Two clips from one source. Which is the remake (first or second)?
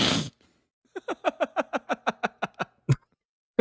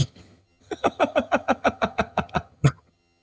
second